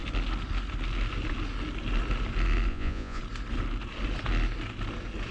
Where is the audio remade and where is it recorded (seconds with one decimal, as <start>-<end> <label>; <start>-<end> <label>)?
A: 0.0-2.7 recorded; 2.7-3.2 remade; 3.2-5.3 recorded

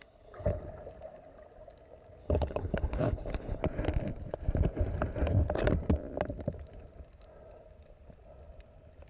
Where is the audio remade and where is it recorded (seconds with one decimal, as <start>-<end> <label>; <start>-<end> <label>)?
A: 0.0-0.6 remade; 0.6-2.2 recorded; 2.2-3.6 remade; 3.6-9.1 recorded

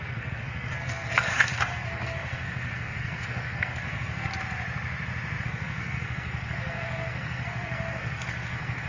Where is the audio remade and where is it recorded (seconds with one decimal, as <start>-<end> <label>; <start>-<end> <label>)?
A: 0.0-4.3 remade; 4.3-5.4 recorded; 5.4-8.9 remade

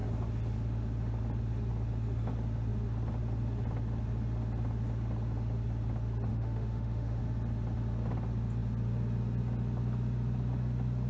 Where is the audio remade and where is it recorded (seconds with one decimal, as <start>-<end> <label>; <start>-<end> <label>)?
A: 0.0-6.3 recorded; 6.3-7.2 remade; 7.2-11.1 recorded